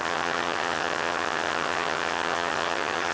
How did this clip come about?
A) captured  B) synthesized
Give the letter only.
B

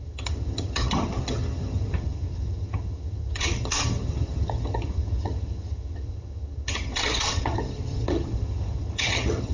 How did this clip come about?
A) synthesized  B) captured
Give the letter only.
A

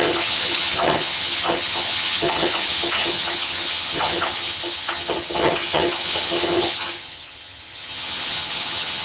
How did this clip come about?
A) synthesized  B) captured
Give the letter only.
A